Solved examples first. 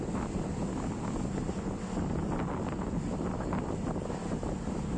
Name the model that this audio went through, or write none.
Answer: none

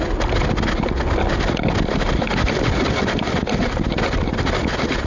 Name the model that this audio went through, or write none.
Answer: none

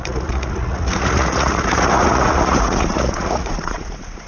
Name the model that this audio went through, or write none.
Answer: vocoder, Vocos